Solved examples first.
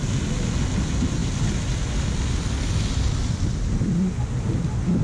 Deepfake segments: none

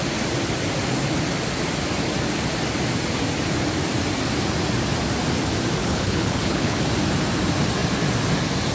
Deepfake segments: 5.8-6.8 (codec, HILCodec)